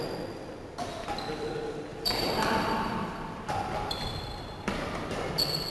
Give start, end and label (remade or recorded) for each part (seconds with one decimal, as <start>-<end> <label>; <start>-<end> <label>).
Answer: 0.0-0.9 recorded; 0.9-1.5 remade; 1.5-1.9 recorded; 1.9-5.3 remade; 5.3-5.7 recorded